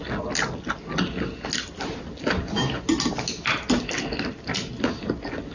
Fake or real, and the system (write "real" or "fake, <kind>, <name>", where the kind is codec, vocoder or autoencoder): real